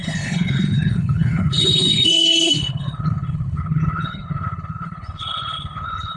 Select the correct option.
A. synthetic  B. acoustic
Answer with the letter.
A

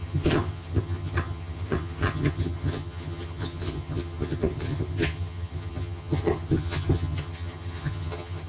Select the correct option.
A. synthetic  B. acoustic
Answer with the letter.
A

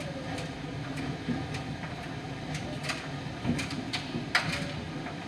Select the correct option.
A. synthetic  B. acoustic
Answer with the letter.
B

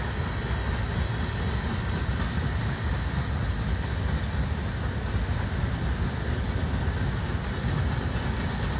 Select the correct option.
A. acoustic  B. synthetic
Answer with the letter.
A